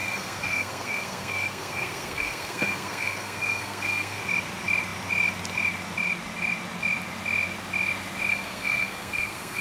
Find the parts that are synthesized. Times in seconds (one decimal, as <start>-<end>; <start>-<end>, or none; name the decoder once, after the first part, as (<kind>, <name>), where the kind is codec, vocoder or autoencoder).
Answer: 0.0-4.2 (codec, SNAC); 8.3-9.6